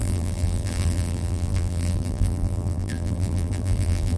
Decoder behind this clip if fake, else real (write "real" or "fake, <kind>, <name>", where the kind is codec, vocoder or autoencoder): fake, vocoder, BigVGAN v2